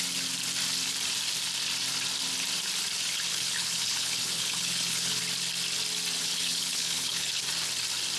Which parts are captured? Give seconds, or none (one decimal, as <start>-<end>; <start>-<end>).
0.0-3.3; 5.2-6.2; 7.4-8.2